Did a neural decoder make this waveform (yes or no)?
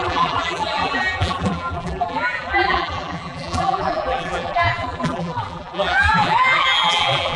yes